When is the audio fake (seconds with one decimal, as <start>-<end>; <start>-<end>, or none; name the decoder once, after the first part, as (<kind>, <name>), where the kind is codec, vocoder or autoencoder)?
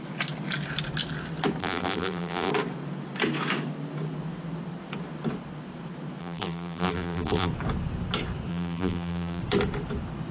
1.6-2.5 (vocoder, BigVGAN v2); 6.2-7.5; 8.5-9.4